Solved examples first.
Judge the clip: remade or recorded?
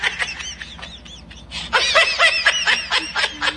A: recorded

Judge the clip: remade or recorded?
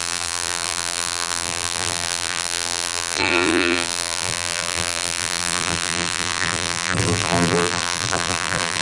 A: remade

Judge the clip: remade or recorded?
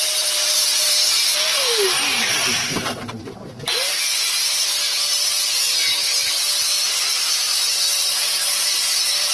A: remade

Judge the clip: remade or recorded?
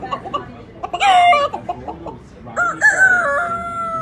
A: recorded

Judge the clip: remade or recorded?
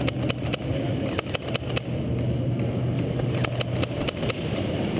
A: recorded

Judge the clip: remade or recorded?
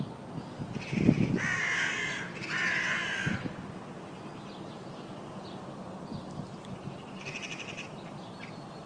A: recorded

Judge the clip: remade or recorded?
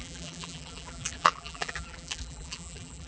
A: remade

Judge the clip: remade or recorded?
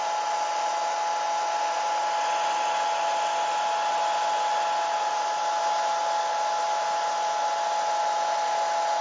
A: recorded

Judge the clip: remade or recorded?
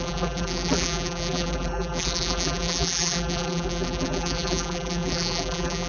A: remade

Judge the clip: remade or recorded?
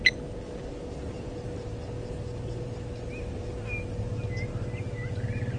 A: recorded